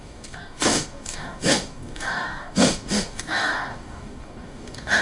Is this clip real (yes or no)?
no